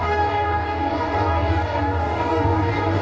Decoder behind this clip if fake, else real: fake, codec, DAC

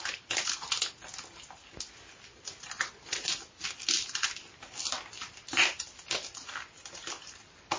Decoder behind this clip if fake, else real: real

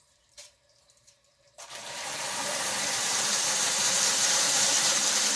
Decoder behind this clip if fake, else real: fake, vocoder, BigVGAN v2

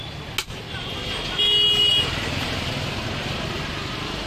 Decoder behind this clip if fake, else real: real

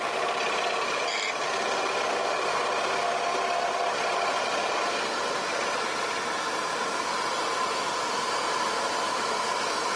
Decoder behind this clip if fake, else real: real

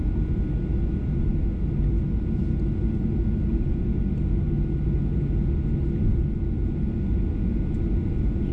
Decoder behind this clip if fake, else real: real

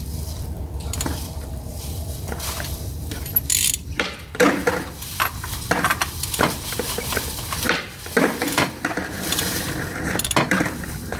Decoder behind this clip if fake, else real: fake, vocoder, BigVGAN v2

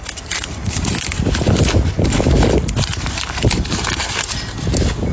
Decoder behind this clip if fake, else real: real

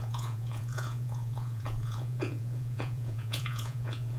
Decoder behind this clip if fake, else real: fake, vocoder, Vocos